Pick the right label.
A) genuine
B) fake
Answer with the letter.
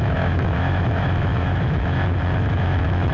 B